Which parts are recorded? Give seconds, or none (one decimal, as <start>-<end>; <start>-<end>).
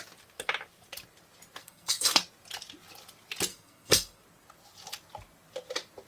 0.0-1.6; 2.2-3.5; 4.2-6.1